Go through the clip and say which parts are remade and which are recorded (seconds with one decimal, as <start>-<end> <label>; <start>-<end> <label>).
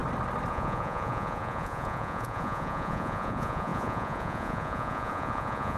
0.0-0.5 recorded; 0.5-5.8 remade